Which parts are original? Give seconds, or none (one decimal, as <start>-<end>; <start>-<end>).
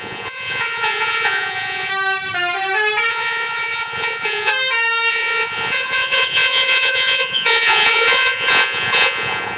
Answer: 1.9-3.1; 4.5-5.1